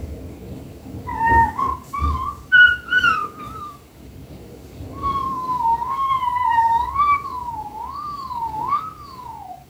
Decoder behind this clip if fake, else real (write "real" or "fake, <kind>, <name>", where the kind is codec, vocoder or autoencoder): fake, codec, DAC